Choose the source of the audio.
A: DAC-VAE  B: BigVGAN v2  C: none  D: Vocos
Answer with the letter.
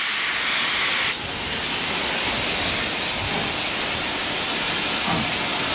C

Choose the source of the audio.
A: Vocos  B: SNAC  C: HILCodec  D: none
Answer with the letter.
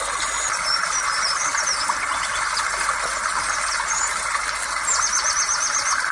D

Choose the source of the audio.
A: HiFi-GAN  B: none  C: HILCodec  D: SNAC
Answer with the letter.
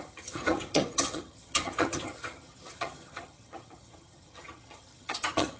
A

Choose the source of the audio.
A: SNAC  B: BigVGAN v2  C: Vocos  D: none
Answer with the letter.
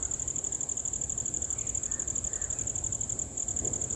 B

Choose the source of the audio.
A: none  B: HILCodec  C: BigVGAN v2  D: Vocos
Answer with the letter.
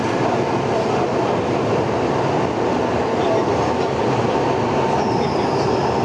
A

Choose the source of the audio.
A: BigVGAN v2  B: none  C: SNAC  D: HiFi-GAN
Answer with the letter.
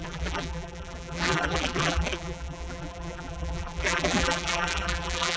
A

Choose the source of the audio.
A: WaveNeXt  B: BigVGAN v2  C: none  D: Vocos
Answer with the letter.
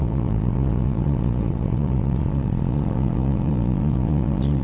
D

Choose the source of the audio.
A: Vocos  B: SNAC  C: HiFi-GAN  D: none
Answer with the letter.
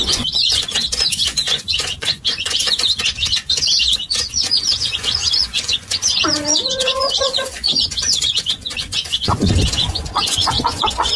A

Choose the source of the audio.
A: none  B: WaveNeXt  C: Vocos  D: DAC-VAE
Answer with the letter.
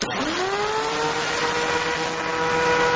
A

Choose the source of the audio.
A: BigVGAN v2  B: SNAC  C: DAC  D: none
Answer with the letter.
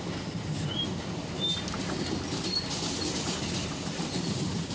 A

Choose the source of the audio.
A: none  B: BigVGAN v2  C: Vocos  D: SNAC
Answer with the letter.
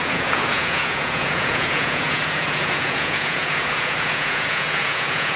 C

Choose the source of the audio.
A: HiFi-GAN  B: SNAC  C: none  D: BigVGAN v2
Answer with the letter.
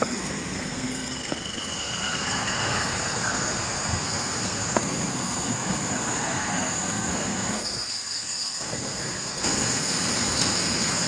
B